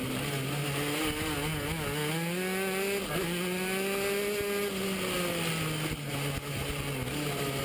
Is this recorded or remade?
recorded